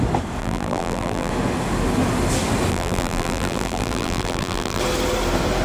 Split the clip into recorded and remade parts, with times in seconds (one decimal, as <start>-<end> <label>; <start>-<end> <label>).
0.0-0.4 recorded; 0.4-1.3 remade; 1.3-2.7 recorded; 2.7-4.8 remade; 4.8-5.6 recorded